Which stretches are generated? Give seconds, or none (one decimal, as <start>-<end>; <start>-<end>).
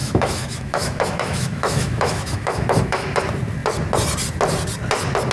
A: 0.0-3.2